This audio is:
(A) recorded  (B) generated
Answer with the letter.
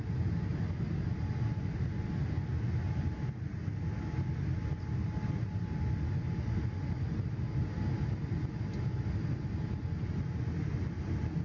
A